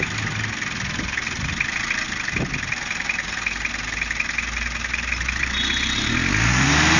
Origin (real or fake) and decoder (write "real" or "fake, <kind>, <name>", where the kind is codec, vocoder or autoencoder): real